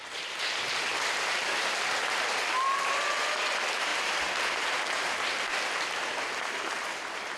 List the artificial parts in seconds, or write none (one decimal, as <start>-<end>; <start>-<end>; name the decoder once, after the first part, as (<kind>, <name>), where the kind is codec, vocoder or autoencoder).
3.9-5.7 (vocoder, BigVGAN v2)